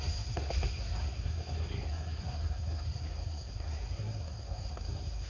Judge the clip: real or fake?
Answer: fake